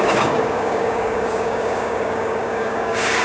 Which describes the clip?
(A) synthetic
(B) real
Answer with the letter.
A